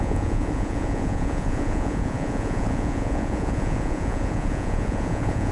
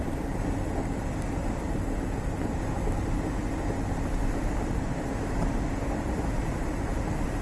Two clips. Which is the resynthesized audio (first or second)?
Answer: first